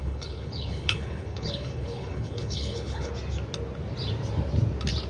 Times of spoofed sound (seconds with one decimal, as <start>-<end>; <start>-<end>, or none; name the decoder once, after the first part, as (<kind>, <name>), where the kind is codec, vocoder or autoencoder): 0.0-3.1 (codec, HILCodec)